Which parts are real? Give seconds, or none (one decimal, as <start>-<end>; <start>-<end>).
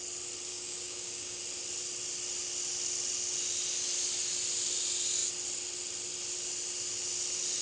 0.0-0.5; 1.4-7.6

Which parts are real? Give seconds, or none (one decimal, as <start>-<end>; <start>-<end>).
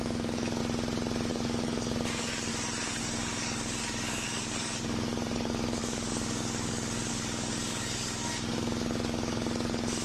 0.6-1.3; 2.5-3.0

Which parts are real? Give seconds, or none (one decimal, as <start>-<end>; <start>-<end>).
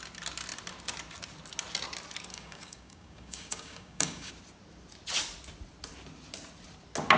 0.0-2.3; 4.3-7.2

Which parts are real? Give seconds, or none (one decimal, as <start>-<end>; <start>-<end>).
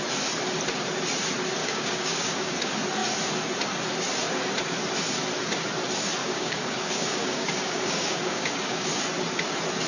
0.0-1.6; 2.6-6.2; 8.9-9.9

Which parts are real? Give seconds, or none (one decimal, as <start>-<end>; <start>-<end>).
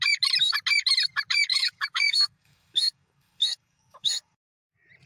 0.0-1.5; 4.6-5.1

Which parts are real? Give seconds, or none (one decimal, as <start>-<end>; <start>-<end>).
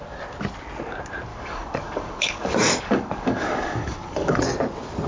0.0-1.3; 4.4-5.1